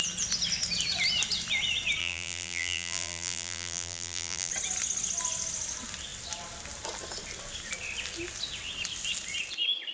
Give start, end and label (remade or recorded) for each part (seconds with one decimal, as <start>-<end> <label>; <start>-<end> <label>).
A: 0.0-2.0 recorded; 2.0-4.5 remade; 4.5-9.9 recorded